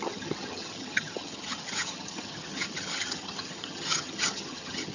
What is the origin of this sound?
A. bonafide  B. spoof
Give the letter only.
B